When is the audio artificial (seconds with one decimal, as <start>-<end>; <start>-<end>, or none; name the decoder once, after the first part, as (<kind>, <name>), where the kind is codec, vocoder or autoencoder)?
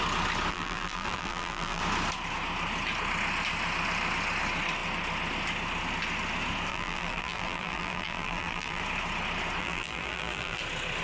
0.5-1.8 (vocoder, BigVGAN v2); 6.7-8.8; 9.6-10.6